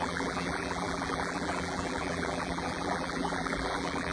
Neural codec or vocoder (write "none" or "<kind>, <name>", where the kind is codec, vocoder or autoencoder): vocoder, BigVGAN v2